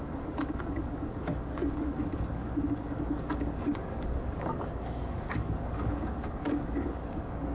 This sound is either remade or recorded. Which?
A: remade